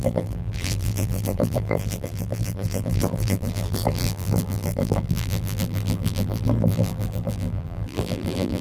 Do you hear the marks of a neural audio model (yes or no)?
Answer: yes